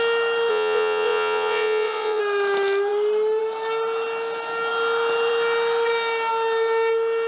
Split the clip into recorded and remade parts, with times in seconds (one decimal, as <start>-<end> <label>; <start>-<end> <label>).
0.0-0.5 recorded; 0.5-2.2 remade; 2.2-7.3 recorded